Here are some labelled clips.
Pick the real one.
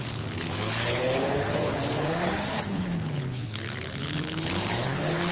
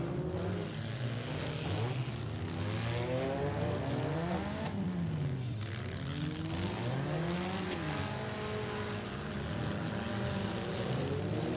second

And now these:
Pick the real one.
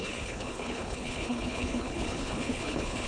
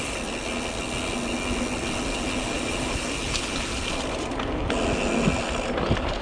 second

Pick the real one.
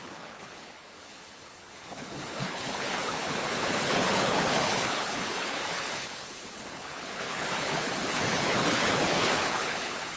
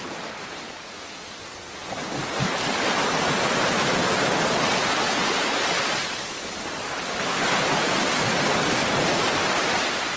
second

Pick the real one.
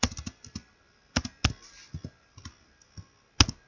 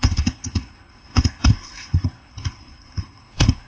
first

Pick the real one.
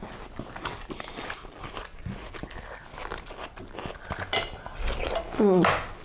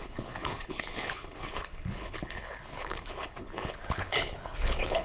first